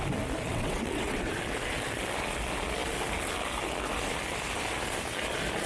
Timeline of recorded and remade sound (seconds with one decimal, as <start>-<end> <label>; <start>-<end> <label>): 0.0-0.5 recorded; 0.5-1.3 remade; 1.3-5.7 recorded